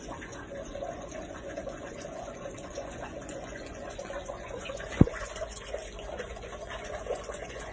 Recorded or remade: remade